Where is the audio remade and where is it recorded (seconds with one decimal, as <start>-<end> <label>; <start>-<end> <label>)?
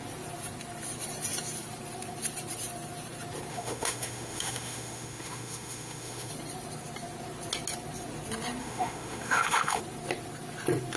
0.0-3.5 recorded; 3.5-6.3 remade; 6.3-8.6 recorded; 8.6-9.8 remade; 9.8-11.0 recorded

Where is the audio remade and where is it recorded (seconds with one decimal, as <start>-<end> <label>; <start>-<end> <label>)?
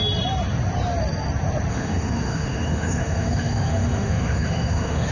0.0-1.7 recorded; 1.7-5.1 remade